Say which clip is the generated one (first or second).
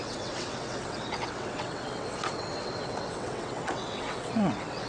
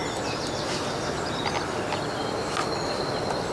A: first